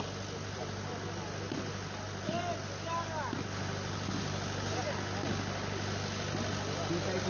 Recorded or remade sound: recorded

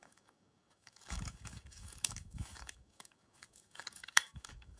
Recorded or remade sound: remade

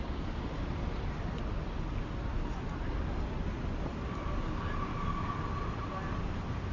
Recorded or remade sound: recorded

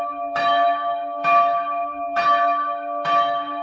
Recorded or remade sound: remade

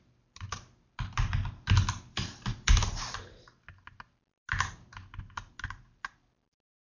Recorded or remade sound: recorded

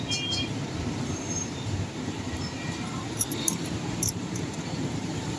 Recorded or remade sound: remade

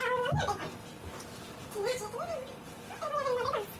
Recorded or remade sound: recorded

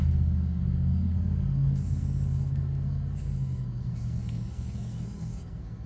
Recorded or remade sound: remade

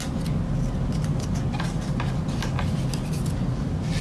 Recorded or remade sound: recorded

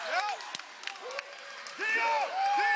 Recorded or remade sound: recorded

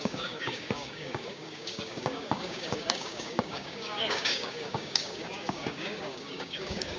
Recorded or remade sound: remade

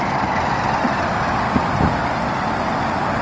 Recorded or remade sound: recorded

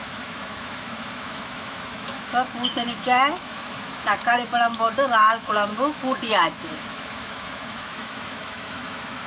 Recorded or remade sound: remade